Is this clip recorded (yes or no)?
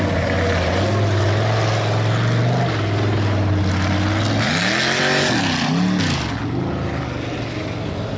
yes